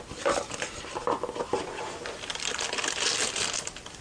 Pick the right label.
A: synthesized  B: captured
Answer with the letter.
B